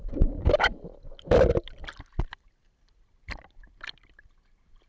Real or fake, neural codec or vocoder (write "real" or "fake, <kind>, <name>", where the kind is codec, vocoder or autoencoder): fake, vocoder, BigVGAN v2